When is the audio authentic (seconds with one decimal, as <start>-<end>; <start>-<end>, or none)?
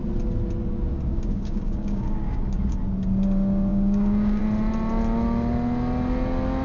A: 0.0-0.9; 2.8-3.7; 4.4-6.6